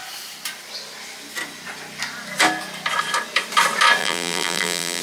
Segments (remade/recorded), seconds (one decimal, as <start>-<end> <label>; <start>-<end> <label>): 0.0-4.0 recorded; 4.0-5.0 remade